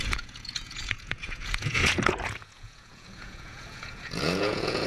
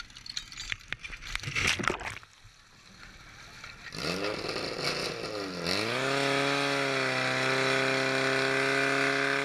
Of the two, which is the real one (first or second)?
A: second